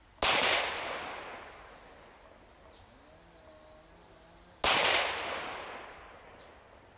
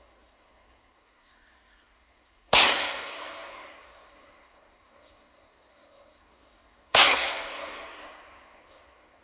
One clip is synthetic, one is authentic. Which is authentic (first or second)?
first